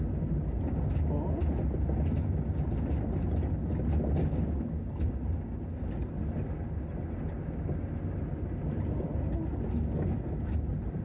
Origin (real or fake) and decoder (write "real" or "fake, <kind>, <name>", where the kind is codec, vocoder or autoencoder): real